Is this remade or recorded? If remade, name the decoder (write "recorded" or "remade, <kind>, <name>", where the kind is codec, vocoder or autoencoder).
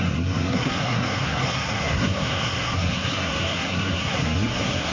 remade, codec, SNAC